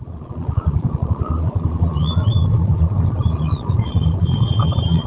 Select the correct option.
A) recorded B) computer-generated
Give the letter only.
B